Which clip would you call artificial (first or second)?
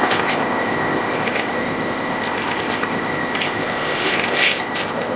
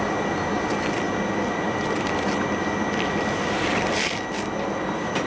first